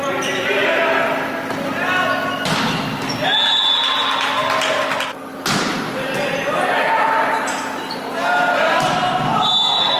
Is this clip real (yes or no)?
yes